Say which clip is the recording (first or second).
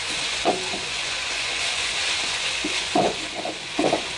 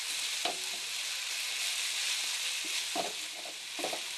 second